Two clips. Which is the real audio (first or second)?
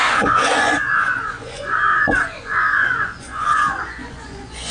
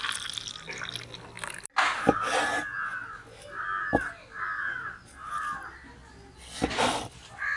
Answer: second